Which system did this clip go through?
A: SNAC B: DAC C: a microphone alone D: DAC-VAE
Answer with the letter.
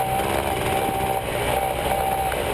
C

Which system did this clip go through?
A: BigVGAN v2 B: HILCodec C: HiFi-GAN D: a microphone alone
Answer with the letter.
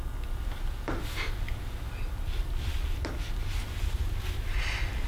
D